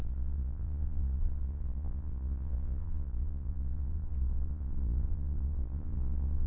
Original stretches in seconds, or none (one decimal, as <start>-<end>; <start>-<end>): none